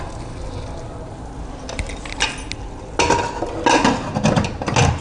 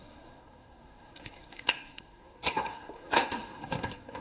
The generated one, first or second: second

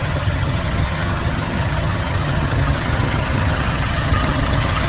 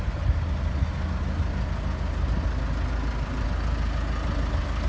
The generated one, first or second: first